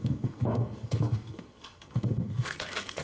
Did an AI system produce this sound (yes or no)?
yes